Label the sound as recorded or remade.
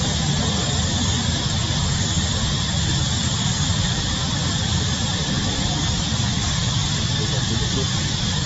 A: remade